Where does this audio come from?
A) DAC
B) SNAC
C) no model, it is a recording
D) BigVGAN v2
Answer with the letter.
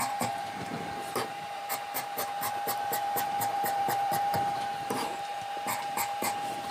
D